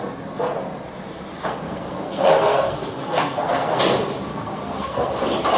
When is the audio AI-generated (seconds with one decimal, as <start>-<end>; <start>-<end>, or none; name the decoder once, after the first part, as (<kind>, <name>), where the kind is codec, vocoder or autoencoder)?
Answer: 1.3-3.9 (codec, SNAC); 4.3-5.1